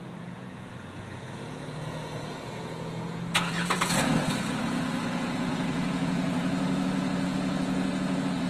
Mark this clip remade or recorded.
remade